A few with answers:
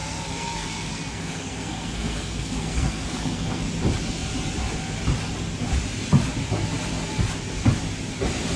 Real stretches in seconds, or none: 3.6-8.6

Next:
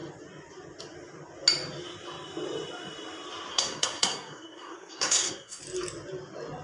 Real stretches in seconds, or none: 0.0-3.5; 5.6-6.6

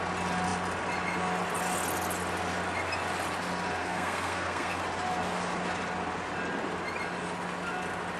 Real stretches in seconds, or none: 0.0-3.8; 4.8-8.2